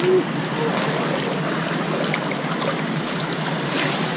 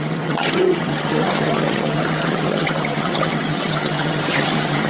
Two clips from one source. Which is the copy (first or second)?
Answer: second